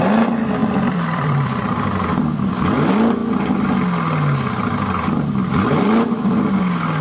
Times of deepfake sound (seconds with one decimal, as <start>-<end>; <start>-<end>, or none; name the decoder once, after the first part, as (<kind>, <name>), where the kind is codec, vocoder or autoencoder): 0.6-2.5 (vocoder, BigVGAN v2)